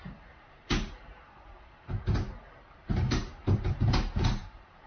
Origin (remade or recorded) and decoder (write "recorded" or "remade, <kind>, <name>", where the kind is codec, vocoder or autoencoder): remade, vocoder, BigVGAN v2